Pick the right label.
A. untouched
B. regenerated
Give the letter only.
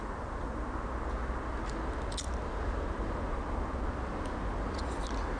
A